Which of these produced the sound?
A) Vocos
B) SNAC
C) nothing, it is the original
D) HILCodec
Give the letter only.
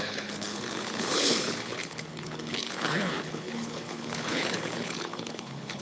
D